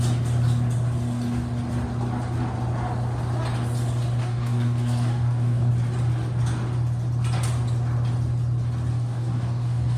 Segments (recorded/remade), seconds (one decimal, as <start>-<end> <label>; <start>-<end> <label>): 0.0-4.2 recorded; 4.2-5.7 remade; 5.7-8.9 recorded; 8.9-10.0 remade